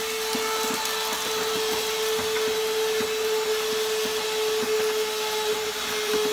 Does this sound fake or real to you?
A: real